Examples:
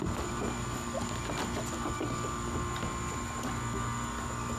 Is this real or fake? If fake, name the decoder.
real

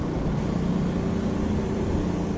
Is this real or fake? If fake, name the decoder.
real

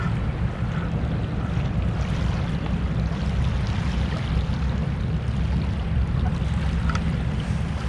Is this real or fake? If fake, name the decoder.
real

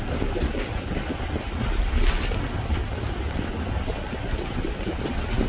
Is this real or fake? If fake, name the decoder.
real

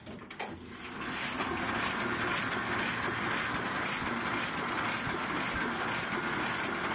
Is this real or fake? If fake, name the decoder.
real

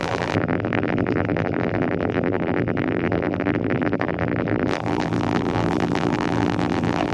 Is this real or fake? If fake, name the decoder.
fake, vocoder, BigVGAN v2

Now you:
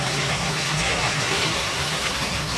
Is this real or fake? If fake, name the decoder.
fake, codec, SNAC